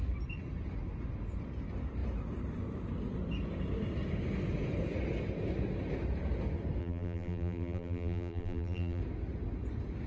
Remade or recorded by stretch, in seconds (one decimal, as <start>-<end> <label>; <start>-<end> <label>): 0.0-6.8 recorded; 6.8-9.0 remade; 9.0-10.1 recorded